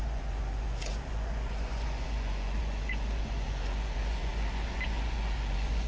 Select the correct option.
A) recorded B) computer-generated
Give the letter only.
B